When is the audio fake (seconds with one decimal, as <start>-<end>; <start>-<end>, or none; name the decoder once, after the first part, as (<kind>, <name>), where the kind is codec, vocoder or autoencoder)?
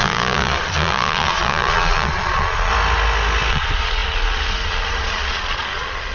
0.0-2.7 (vocoder, Vocos); 3.5-6.1